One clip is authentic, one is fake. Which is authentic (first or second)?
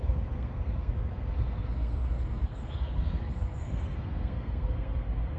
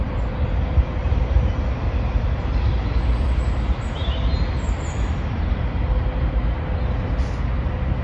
second